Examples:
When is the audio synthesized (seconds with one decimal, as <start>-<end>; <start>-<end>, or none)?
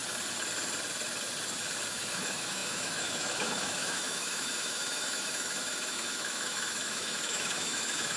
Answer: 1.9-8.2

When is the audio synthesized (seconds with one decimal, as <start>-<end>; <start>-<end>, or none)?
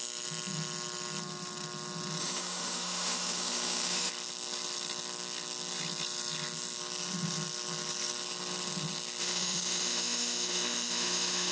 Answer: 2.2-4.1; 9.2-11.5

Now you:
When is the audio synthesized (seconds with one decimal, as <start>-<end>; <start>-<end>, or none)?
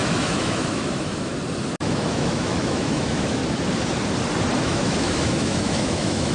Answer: 0.0-1.3; 1.8-3.4; 4.6-6.3